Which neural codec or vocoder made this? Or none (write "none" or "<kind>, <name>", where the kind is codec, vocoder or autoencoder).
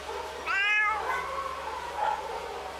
none